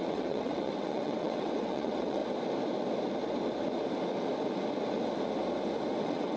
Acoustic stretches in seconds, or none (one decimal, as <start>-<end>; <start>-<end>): 2.2-6.0